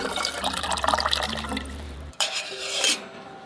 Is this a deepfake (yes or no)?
yes